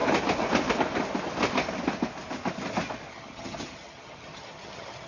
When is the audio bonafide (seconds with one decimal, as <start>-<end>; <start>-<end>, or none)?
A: 0.0-3.1